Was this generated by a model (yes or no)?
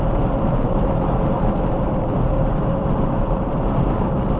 no